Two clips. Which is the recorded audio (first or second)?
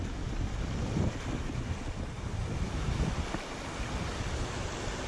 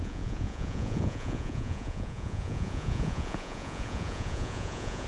first